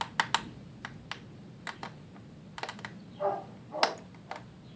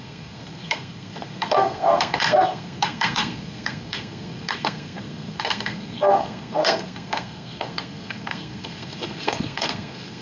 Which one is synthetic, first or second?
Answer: second